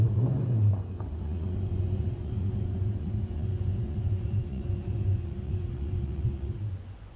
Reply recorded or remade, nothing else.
remade